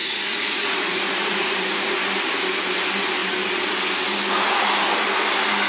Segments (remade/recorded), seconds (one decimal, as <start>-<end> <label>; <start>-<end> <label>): 0.0-1.9 remade; 1.9-5.7 recorded